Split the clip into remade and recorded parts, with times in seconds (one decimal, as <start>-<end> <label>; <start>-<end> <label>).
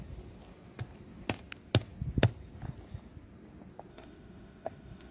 0.0-3.9 recorded; 3.9-5.1 remade